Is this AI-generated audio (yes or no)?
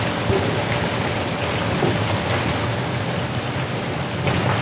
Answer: no